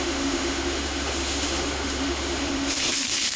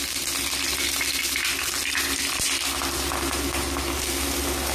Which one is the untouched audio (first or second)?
second